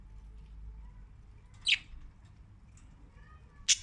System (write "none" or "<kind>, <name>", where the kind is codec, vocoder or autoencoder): none